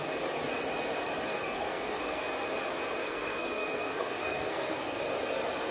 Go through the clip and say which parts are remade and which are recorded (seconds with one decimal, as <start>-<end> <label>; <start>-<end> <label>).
0.0-1.3 recorded; 1.3-2.2 remade; 2.2-3.0 recorded; 3.0-5.0 remade; 5.0-5.7 recorded